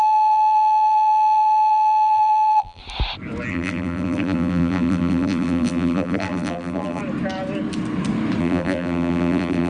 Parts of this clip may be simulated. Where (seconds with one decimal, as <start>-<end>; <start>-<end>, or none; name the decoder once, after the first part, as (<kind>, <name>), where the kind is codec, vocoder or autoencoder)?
0.0-2.8 (vocoder, BigVGAN v2); 3.5-7.0; 8.4-9.7